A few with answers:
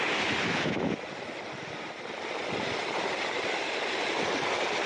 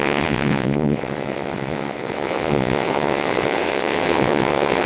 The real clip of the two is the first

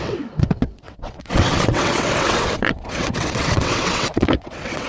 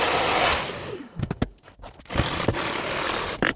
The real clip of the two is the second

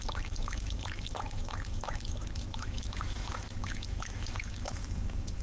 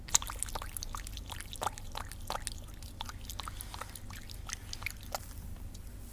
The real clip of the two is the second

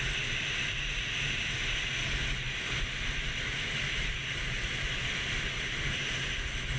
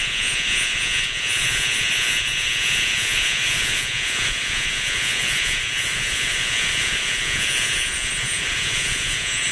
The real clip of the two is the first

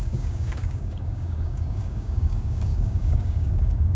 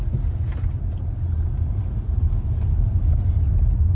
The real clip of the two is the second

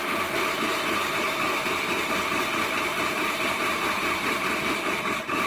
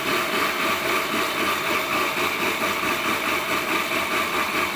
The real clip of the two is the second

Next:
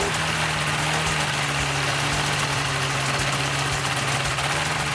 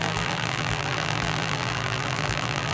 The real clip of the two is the first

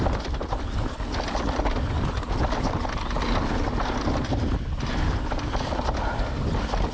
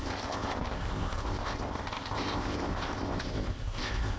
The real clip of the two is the first